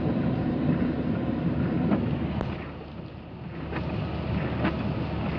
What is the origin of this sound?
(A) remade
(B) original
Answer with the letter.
B